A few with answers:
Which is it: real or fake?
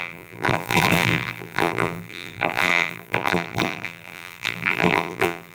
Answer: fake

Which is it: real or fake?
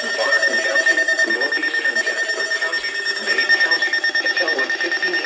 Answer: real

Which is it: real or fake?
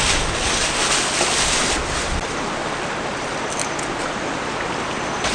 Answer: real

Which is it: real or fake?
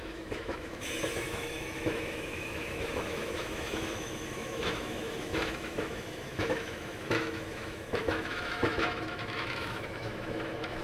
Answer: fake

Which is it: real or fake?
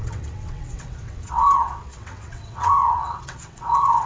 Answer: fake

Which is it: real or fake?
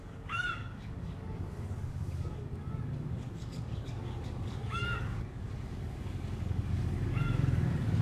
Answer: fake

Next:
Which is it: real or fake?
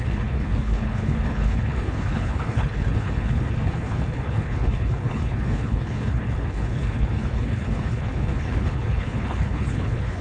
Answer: fake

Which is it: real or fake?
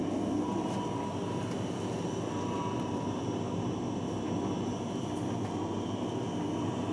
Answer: real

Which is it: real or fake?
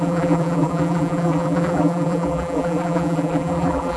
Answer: fake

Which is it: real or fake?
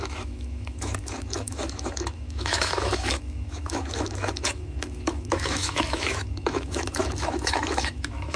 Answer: fake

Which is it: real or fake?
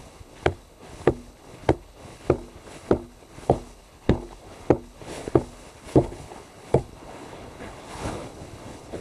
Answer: fake